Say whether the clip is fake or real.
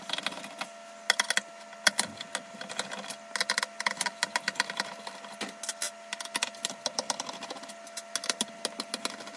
real